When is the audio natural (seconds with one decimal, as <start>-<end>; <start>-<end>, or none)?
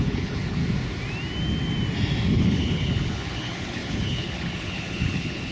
0.6-2.3